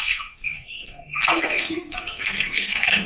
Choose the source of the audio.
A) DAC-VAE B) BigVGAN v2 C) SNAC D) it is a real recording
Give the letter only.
C